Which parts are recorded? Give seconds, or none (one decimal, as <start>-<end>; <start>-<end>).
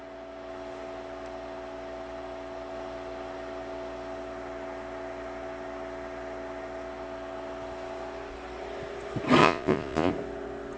0.0-9.4; 10.1-10.8